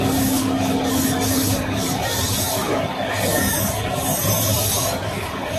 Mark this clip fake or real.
fake